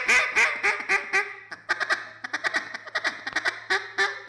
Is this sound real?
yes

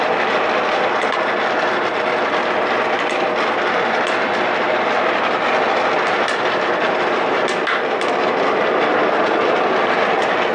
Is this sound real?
yes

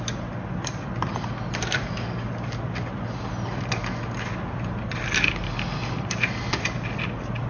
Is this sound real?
yes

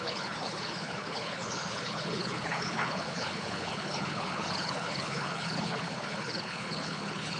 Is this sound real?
no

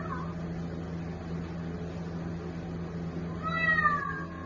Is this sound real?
yes